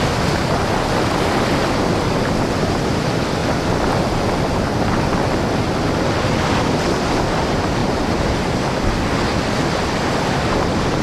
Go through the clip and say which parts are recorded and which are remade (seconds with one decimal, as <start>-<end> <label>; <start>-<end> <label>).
0.0-3.4 recorded; 3.4-5.1 remade; 5.1-7.8 recorded; 7.8-8.5 remade; 8.5-11.0 recorded